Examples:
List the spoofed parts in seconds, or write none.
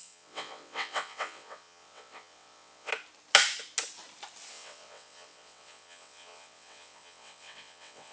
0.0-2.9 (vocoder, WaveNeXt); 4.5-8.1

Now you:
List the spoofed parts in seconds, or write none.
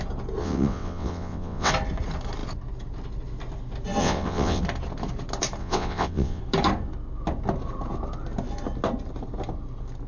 0.4-1.7 (vocoder, WaveNeXt); 4.0-4.6; 5.6-6.4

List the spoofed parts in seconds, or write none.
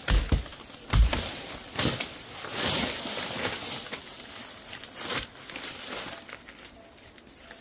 none